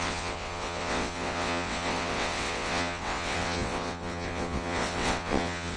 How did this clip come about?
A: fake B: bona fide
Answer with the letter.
A